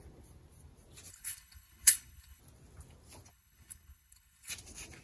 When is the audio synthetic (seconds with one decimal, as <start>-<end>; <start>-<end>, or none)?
1.1-2.4; 3.3-4.5